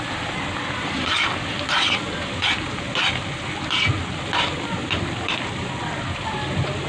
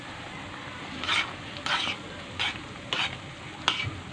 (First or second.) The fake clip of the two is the first